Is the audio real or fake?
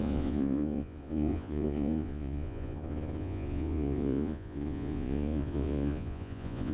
fake